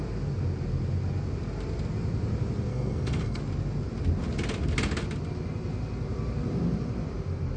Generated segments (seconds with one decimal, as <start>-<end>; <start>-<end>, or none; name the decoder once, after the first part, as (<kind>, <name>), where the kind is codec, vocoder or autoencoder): 2.7-3.4 (codec, SNAC)